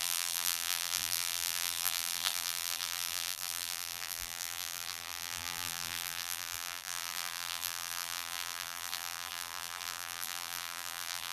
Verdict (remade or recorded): remade